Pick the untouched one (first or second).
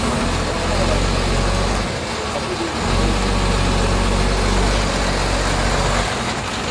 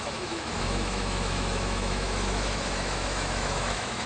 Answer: first